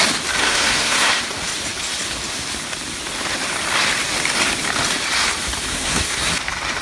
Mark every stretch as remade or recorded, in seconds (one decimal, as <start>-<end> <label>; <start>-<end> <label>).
0.0-0.4 recorded; 0.4-1.2 remade; 1.2-5.7 recorded; 5.7-6.3 remade; 6.3-6.8 recorded